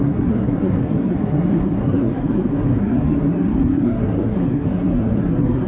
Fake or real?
fake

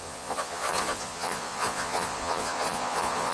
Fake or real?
fake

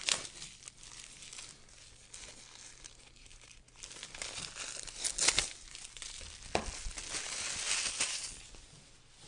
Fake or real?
real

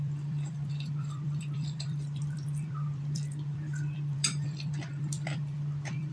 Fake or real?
fake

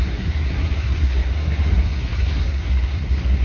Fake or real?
fake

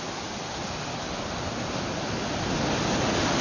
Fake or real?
real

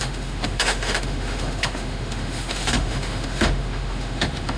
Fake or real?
fake